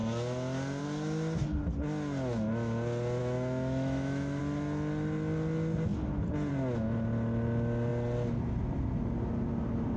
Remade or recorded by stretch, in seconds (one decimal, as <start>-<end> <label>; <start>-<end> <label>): 0.0-3.2 recorded; 3.2-4.4 remade; 4.4-10.0 recorded